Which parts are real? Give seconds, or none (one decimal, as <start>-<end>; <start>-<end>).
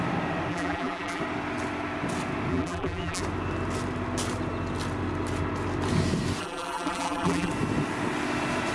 0.0-0.5; 1.2-2.5; 3.2-6.4; 7.5-8.7